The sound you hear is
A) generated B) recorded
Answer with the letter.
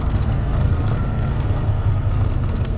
A